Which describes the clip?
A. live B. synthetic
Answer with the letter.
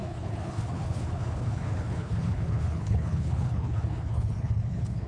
B